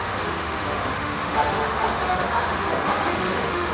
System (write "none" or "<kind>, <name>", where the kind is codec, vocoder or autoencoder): autoencoder, DAC-VAE